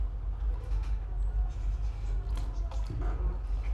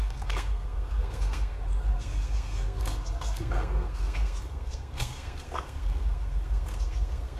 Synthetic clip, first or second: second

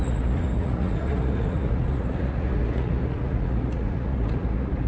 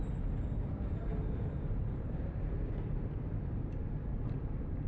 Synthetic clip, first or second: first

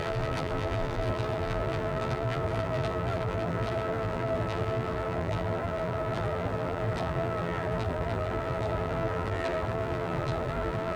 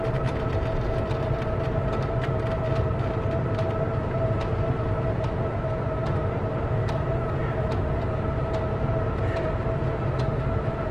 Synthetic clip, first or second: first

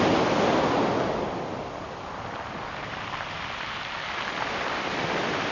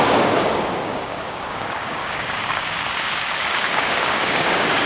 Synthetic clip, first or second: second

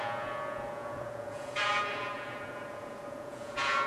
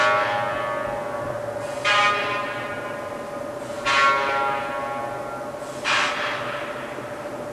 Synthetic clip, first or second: first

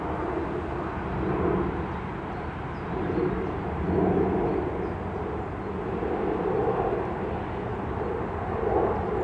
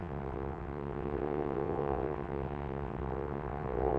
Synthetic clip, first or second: second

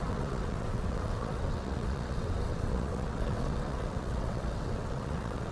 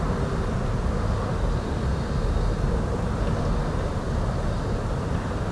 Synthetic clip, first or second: first